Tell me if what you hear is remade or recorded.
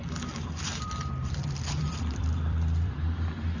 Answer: remade